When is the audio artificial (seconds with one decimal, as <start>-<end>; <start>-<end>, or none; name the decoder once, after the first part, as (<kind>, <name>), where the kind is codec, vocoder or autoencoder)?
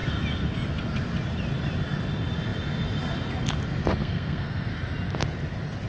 4.0-4.7 (codec, SNAC)